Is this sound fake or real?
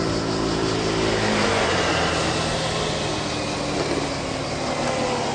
real